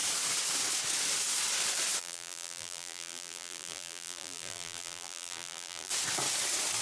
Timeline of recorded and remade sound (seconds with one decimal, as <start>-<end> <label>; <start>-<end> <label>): 0.0-2.0 recorded; 2.0-5.9 remade; 5.9-6.8 recorded